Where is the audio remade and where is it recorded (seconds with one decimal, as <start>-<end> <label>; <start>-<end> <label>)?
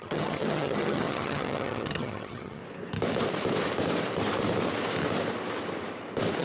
0.0-2.6 remade; 2.6-6.4 recorded